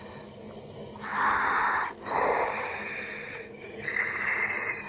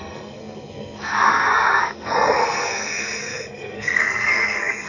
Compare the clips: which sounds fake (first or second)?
second